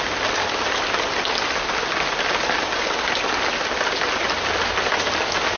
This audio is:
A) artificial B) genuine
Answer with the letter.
B